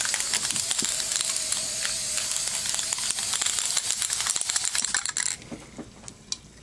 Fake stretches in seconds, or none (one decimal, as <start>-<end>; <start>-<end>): none